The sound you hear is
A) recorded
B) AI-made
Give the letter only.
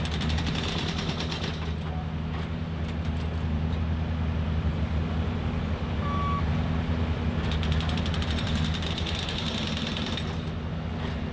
A